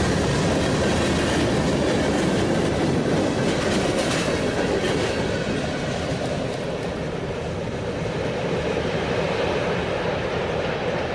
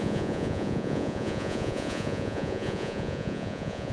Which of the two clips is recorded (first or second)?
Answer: first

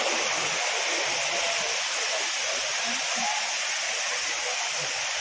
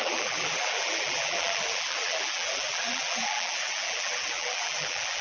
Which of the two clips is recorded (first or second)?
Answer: first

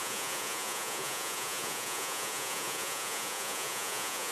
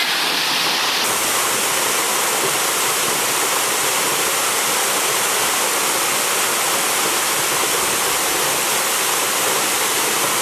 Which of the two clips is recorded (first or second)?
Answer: second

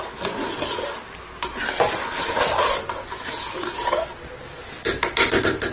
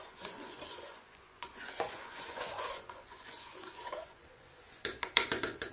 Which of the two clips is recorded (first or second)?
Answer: first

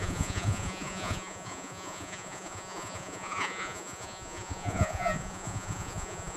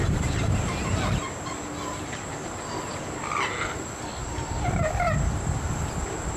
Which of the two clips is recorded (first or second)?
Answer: second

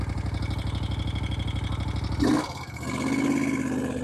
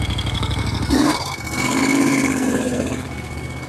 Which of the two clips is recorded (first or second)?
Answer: first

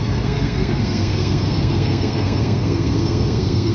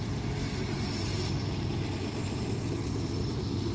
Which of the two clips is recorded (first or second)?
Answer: second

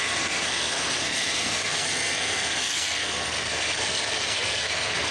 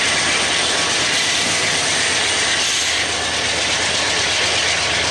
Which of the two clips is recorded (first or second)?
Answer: second